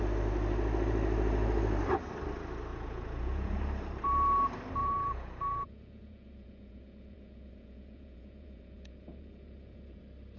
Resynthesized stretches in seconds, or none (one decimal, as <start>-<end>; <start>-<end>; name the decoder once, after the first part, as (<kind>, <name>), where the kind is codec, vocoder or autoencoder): 2.7-3.6 (vocoder, Vocos); 4.8-10.0